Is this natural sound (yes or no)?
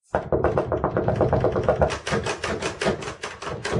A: yes